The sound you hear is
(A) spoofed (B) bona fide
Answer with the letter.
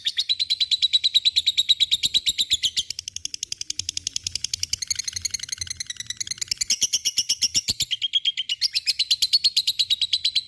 B